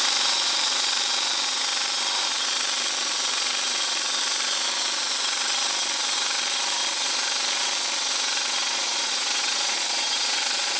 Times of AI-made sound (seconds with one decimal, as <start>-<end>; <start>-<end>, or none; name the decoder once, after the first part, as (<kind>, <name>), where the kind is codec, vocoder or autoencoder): 8.6-10.8 (vocoder, Vocos)